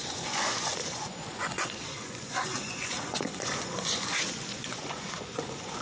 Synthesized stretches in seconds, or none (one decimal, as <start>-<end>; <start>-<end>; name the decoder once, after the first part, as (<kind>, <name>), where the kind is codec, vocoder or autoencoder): 0.0-5.8 (vocoder, Vocos)

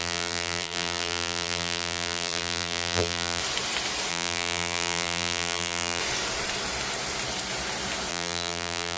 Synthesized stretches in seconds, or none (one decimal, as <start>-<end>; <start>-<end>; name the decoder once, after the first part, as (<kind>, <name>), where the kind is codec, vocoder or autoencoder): 0.0-3.4 (vocoder, BigVGAN v2); 4.1-6.0; 8.1-9.0